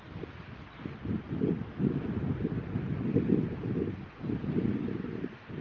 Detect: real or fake real